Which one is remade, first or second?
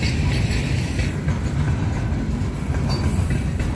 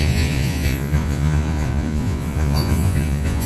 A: second